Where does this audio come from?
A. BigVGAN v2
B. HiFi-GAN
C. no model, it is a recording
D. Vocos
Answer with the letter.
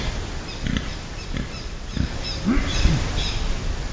C